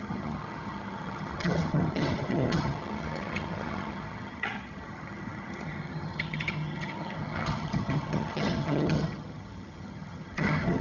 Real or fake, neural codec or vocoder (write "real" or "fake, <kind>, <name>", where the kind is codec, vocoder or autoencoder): fake, vocoder, HiFi-GAN